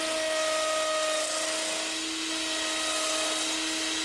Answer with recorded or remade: recorded